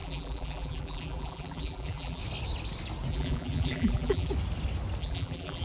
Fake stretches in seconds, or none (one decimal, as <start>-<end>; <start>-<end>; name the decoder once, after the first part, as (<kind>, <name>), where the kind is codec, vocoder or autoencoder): 0.0-2.2 (vocoder, BigVGAN v2); 3.1-4.3; 5.0-5.6